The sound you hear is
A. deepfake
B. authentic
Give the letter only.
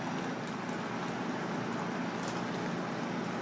B